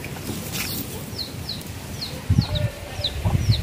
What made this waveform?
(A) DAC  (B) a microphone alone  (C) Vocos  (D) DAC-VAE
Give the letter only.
B